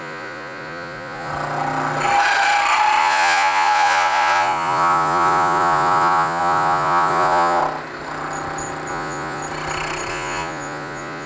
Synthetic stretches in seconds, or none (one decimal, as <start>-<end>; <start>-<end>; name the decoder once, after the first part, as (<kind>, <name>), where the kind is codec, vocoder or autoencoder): 0.0-1.3 (vocoder, Vocos); 3.0-7.6; 8.9-9.4; 10.1-11.3